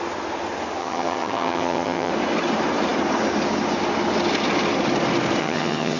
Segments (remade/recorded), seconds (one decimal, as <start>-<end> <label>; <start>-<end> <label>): 0.0-0.8 recorded; 0.8-2.1 remade; 2.1-5.4 recorded; 5.4-6.0 remade